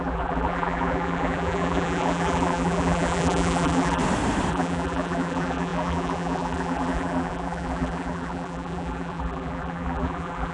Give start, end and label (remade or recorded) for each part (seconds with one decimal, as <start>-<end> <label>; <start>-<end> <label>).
0.0-4.0 remade; 4.0-4.5 recorded; 4.5-10.5 remade